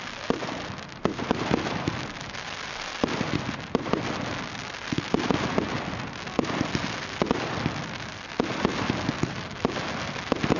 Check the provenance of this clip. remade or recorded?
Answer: recorded